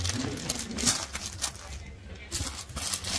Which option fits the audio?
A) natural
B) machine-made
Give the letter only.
A